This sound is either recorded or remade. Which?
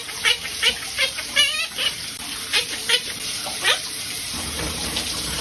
remade